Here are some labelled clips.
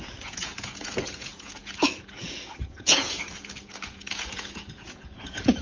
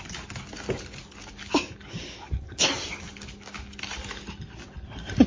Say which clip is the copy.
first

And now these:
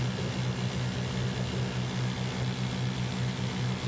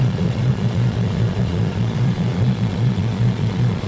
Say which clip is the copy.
second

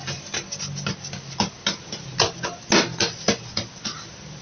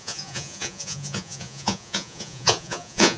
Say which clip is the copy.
second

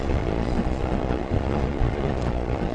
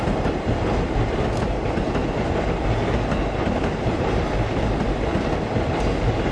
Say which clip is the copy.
first